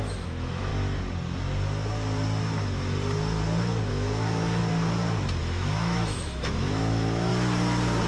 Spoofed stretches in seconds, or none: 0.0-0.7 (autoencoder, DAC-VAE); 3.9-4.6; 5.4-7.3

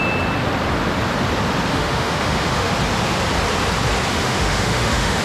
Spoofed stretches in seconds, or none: 1.7-2.7 (autoencoder, DAC-VAE); 4.1-5.2

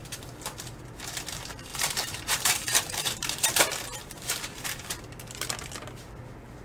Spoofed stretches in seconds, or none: 1.7-3.6 (vocoder, BigVGAN v2); 4.0-5.0

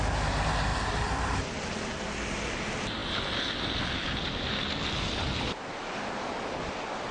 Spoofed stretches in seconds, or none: none

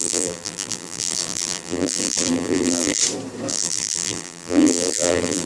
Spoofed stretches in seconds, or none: 0.0-3.0 (vocoder, BigVGAN v2); 3.5-5.5